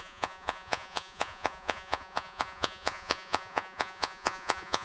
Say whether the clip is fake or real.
fake